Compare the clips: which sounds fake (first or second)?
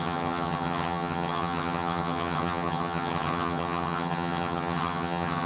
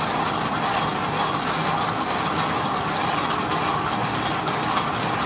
first